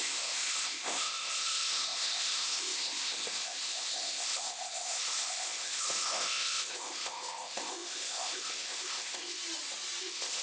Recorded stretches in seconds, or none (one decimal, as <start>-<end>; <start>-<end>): 9.4-10.0